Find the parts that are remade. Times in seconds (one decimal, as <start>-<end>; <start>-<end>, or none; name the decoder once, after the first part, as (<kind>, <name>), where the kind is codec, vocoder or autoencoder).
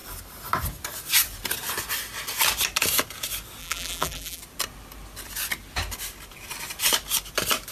3.6-4.4 (vocoder, BigVGAN v2)